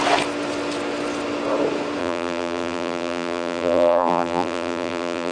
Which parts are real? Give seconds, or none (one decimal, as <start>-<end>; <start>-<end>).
0.0-2.0